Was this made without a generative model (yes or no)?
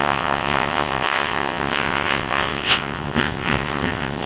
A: no